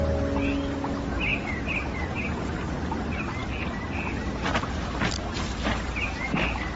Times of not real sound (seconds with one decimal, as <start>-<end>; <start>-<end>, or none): 3.4-6.8